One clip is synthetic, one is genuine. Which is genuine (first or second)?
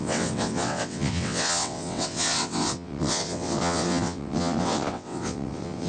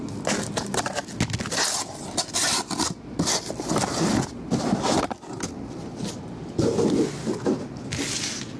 second